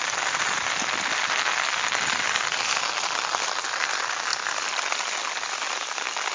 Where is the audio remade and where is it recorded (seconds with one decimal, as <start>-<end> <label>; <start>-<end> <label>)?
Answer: 0.0-4.3 recorded; 4.3-5.0 remade; 5.0-6.3 recorded